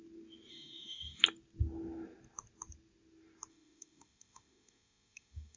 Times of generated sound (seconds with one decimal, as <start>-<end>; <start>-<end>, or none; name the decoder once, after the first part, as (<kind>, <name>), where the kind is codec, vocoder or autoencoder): 0.5-1.2 (autoencoder, DAC-VAE); 3.5-5.6